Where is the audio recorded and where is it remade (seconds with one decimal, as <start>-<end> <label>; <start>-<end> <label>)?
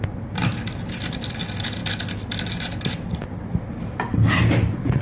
0.0-5.0 recorded